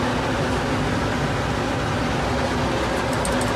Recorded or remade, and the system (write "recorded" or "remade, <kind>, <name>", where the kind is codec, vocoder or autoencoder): recorded